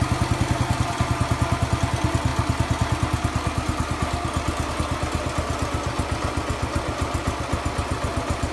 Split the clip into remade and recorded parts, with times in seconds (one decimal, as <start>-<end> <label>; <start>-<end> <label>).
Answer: 0.0-8.5 recorded